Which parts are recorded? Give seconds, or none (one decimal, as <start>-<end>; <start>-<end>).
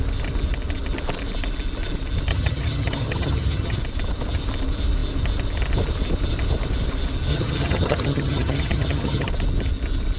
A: 0.0-2.3; 3.8-7.3; 9.3-10.2